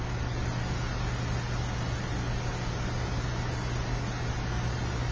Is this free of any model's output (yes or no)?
yes